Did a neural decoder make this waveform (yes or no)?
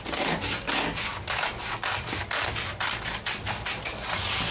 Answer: no